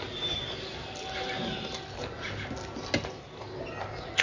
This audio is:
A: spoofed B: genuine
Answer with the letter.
B